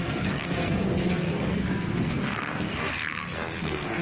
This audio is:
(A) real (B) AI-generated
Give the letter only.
B